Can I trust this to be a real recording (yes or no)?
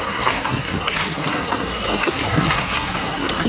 no